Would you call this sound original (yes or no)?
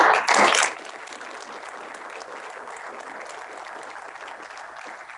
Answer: yes